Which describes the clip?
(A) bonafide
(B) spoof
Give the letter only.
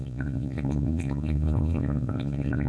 B